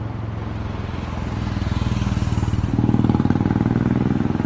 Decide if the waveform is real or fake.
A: real